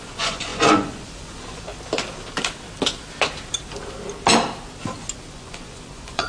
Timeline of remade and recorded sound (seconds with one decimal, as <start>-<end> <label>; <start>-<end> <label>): 0.0-1.7 remade; 1.7-5.3 recorded; 5.3-6.3 remade